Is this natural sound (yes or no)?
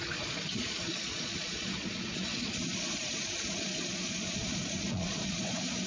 no